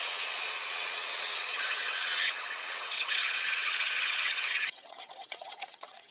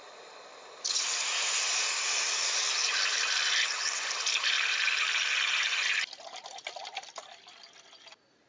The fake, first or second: first